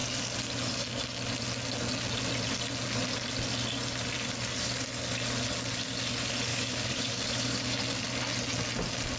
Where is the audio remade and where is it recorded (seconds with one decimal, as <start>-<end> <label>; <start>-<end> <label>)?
0.0-6.5 recorded; 6.5-7.6 remade; 7.6-9.2 recorded